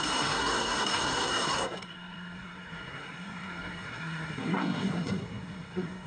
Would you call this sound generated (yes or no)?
yes